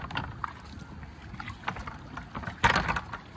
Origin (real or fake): real